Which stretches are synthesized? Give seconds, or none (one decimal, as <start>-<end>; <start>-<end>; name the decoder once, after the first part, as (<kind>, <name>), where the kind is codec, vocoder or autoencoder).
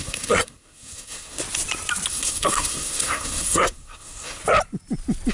0.0-1.4 (codec, SNAC); 2.1-4.4